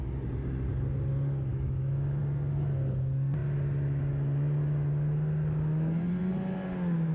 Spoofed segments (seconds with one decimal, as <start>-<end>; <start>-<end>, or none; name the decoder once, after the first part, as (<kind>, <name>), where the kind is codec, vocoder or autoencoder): 1.5-2.2 (autoencoder, DAC-VAE)